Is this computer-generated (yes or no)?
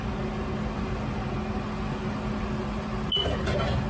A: no